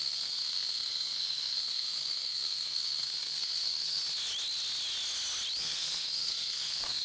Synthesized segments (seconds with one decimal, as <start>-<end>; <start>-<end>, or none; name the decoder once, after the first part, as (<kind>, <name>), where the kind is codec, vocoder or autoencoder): 0.0-4.0 (codec, SNAC); 5.6-7.0